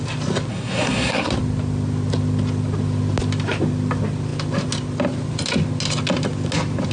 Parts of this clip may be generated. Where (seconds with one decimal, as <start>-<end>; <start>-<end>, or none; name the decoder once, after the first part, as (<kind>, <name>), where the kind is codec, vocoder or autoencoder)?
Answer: 0.5-1.3 (codec, SNAC)